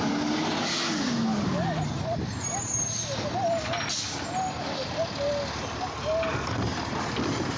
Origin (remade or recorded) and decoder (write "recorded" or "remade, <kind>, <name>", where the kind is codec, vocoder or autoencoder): recorded